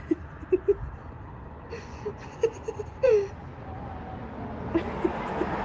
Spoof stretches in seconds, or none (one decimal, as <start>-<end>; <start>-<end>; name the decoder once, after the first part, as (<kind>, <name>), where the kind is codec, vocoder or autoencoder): 1.0-3.1 (vocoder, Vocos)